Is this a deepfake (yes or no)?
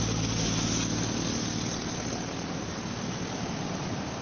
no